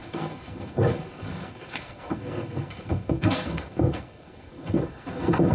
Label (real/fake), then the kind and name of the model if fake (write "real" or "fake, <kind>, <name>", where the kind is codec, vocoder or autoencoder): fake, codec, SNAC